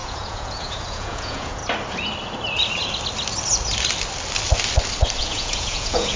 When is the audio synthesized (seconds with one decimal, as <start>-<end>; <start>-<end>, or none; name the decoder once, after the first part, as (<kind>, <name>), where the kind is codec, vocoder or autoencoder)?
0.0-1.6 (vocoder, Vocos); 5.2-6.2